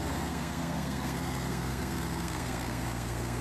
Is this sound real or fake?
fake